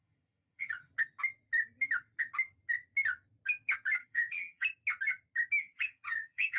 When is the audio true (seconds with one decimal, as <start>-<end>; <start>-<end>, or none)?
0.9-4.0; 4.6-5.6